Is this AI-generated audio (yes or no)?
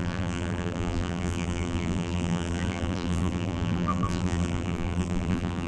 yes